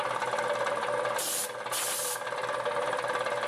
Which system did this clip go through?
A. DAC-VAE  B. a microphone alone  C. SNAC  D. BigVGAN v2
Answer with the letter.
B